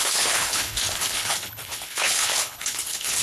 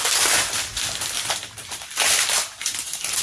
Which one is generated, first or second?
first